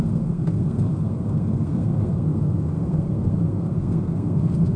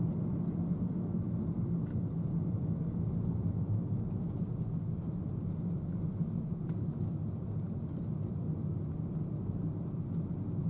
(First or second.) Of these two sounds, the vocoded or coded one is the first